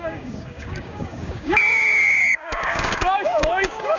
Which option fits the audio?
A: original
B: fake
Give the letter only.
B